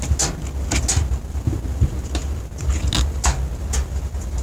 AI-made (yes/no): no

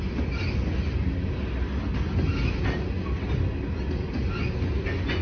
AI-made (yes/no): no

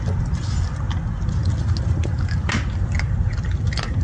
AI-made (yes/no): no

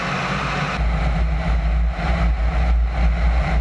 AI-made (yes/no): no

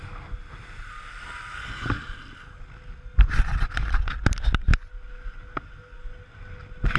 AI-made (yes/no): no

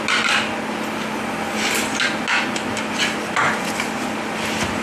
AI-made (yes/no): no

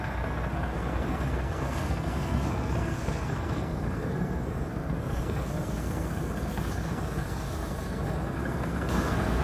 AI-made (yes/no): yes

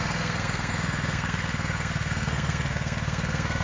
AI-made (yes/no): yes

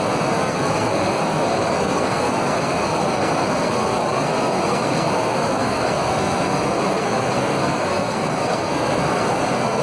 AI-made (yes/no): yes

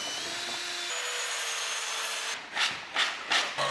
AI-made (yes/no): no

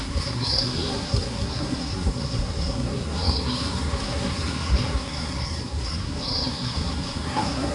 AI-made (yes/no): yes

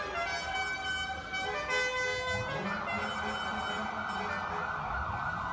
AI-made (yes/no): no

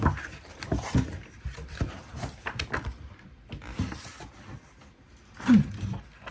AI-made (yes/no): no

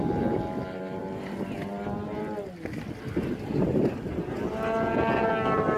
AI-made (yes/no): no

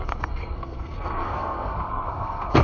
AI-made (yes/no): yes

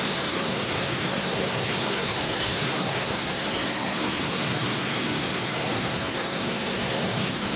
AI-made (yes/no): yes